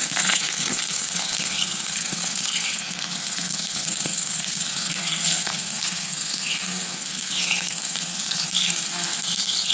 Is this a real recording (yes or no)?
no